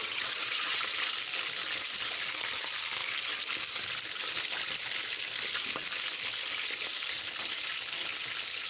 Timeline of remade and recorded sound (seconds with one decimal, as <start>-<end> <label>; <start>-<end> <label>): 0.0-0.8 remade; 0.8-8.7 recorded